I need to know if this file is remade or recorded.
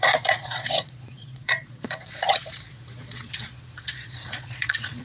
remade